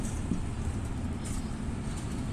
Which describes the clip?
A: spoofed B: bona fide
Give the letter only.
A